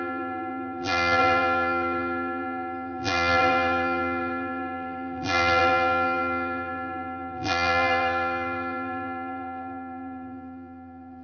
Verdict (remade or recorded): remade